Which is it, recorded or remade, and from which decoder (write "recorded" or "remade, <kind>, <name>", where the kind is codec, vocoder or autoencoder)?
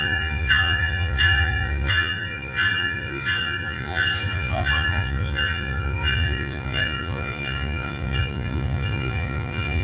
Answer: remade, vocoder, Vocos